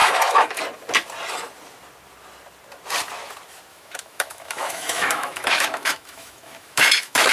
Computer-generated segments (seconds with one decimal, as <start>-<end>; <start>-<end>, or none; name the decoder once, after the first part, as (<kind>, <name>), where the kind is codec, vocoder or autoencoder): 0.0-0.6 (autoencoder, DAC-VAE); 3.7-7.3